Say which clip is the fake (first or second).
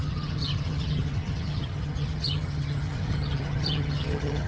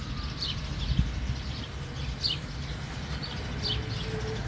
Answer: first